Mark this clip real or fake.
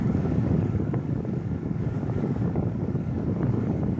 fake